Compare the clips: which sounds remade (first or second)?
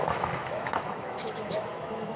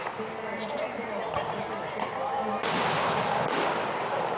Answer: first